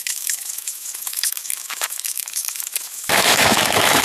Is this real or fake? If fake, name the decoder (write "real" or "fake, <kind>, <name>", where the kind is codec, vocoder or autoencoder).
fake, autoencoder, DAC-VAE